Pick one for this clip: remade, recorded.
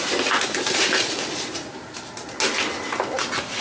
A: recorded